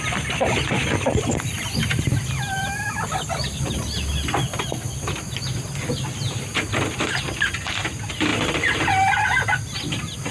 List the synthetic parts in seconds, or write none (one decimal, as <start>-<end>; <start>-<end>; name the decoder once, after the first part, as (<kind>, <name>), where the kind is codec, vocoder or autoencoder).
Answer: none